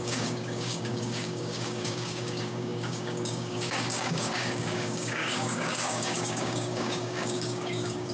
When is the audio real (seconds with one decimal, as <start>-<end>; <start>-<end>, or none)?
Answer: none